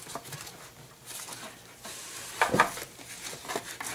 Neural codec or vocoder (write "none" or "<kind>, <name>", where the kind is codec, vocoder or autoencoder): none